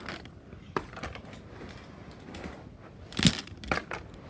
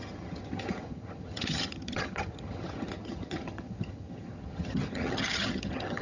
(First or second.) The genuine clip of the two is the first